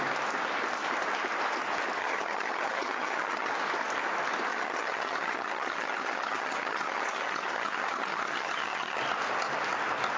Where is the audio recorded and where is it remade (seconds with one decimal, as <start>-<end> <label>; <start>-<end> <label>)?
0.0-2.0 recorded; 2.0-3.5 remade; 3.5-4.5 recorded; 4.5-9.0 remade; 9.0-10.2 recorded